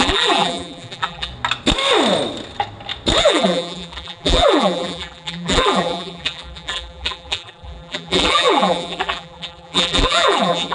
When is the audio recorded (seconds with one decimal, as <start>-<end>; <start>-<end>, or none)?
1.3-3.2